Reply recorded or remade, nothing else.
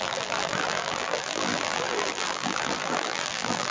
remade